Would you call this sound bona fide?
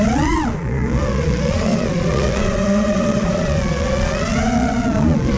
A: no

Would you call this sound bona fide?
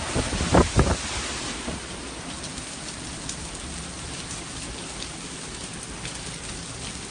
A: yes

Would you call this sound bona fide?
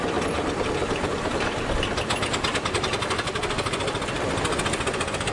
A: yes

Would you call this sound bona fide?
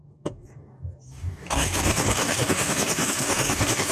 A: no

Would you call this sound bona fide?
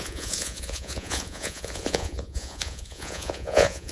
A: no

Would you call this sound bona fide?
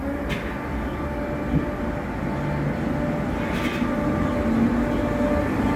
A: yes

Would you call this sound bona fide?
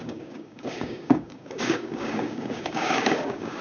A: no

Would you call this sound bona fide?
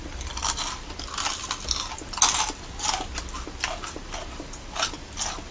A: yes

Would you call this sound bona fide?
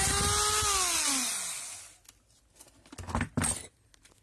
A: yes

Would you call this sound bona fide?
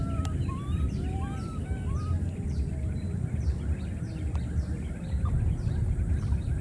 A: yes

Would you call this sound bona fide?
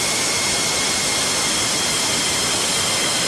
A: yes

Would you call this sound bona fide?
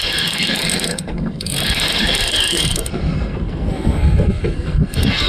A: no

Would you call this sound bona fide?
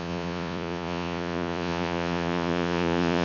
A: no